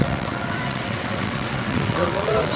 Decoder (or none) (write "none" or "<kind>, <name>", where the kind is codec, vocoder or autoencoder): vocoder, WaveNeXt